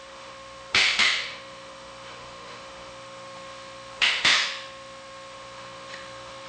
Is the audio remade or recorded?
remade